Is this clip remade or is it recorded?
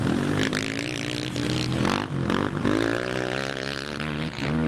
recorded